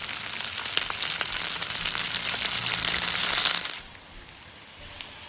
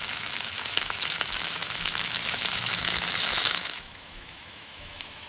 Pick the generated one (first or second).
second